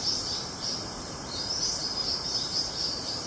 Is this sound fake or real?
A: fake